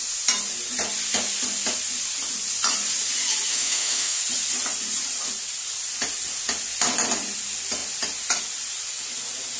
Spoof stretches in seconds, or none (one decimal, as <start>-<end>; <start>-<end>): 3.5-4.2